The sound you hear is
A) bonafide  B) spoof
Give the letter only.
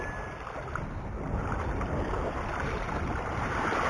A